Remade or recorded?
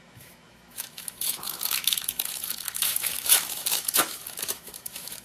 remade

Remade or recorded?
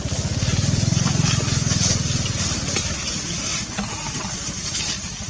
recorded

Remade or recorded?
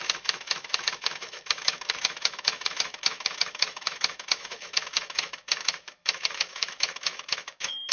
remade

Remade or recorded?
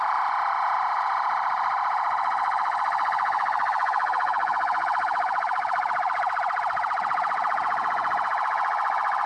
remade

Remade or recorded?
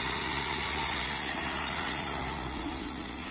remade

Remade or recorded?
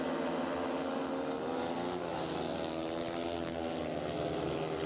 recorded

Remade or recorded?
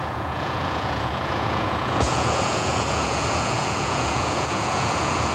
remade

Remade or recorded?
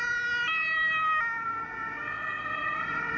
recorded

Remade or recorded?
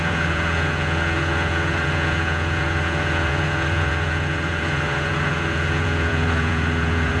remade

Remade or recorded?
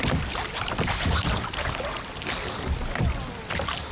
recorded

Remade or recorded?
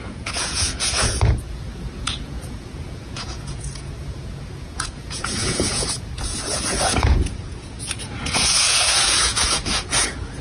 remade